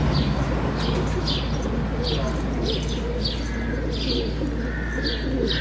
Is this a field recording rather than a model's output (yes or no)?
yes